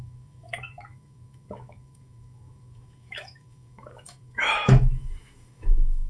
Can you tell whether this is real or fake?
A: fake